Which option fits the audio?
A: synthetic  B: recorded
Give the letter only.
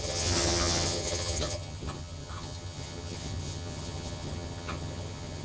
A